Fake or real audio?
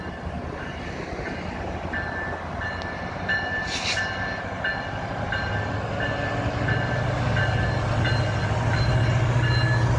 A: real